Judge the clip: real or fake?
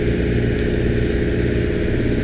real